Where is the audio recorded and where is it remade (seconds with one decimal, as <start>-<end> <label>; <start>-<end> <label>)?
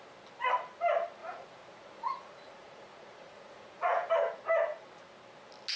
0.0-1.2 recorded; 1.2-4.1 remade; 4.1-5.8 recorded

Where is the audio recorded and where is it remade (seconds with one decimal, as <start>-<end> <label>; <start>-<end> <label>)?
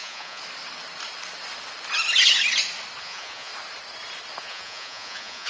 0.0-0.4 remade; 0.4-3.0 recorded; 3.0-3.5 remade; 3.5-4.4 recorded; 4.4-5.5 remade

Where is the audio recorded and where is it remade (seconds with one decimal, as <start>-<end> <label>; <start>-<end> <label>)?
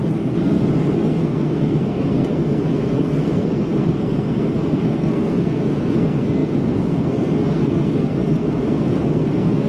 0.0-9.7 remade